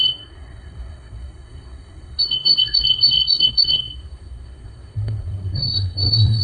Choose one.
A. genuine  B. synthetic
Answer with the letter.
B